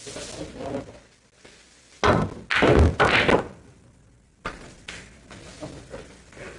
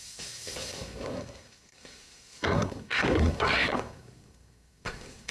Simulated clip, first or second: second